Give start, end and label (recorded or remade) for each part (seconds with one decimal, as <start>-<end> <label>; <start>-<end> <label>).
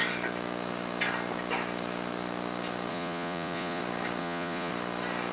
0.0-2.9 recorded; 2.9-3.8 remade; 3.8-4.2 recorded; 4.2-4.7 remade; 4.7-5.3 recorded